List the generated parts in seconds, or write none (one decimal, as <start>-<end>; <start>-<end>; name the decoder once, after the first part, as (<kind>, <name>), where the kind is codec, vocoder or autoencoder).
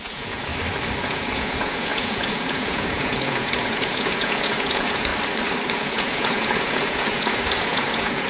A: 0.0-0.5 (vocoder, Vocos); 1.0-5.1; 5.7-8.3